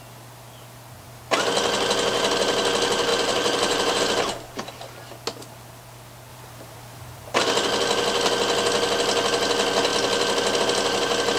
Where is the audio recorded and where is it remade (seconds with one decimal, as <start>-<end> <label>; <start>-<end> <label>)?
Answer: 0.0-3.1 recorded; 3.1-4.0 remade; 4.0-6.3 recorded; 6.3-7.4 remade; 7.4-11.4 recorded